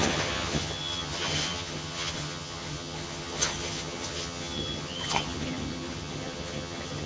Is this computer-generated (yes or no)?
yes